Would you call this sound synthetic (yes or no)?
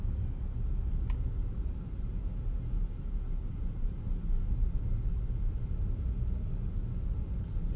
no